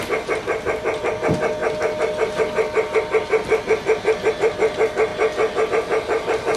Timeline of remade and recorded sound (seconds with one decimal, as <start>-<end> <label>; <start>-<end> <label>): 0.0-1.6 remade; 1.6-4.3 recorded; 4.3-5.1 remade; 5.1-5.7 recorded; 5.7-6.6 remade